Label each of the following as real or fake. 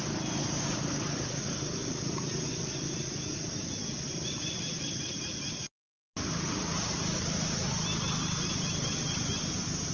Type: real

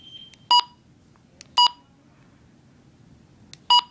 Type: real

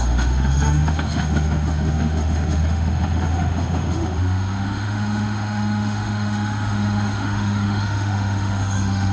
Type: fake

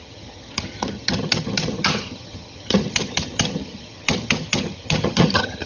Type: fake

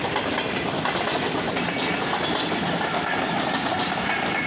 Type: real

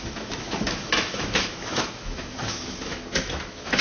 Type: fake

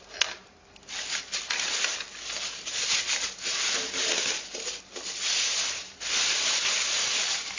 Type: real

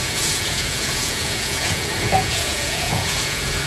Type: fake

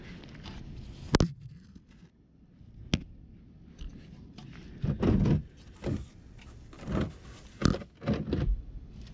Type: real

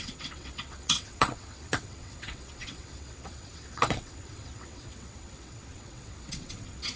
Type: fake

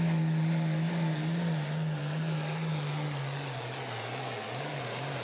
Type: real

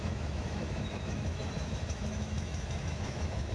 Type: fake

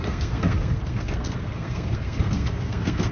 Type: fake